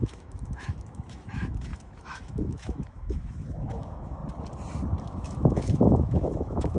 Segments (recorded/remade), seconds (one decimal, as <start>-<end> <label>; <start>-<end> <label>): 0.0-4.2 remade; 4.2-5.0 recorded; 5.0-6.8 remade

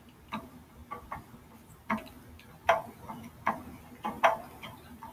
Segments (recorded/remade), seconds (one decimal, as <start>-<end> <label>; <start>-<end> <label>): 0.0-5.1 recorded

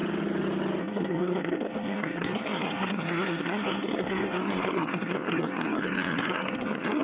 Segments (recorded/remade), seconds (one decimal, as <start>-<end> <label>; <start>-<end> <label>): 0.0-0.8 recorded; 0.8-7.0 remade

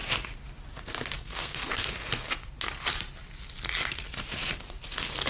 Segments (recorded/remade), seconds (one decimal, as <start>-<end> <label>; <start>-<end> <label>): 0.0-1.2 recorded; 1.2-1.7 remade; 1.7-5.3 recorded

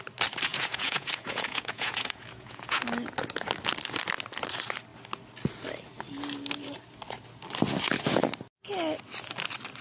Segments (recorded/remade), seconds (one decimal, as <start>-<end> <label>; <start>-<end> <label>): 0.0-0.5 recorded; 0.5-2.8 remade; 2.8-9.8 recorded